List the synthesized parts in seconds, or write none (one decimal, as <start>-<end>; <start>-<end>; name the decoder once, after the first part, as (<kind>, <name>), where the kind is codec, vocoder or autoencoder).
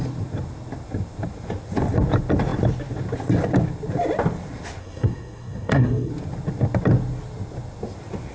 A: 4.8-6.1 (codec, SNAC)